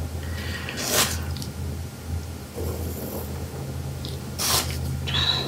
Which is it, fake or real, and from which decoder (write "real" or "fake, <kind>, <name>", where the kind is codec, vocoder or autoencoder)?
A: real